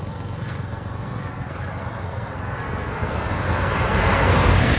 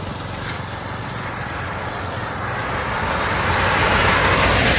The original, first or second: second